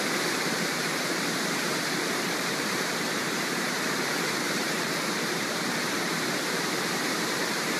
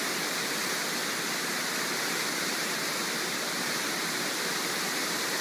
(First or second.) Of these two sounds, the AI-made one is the first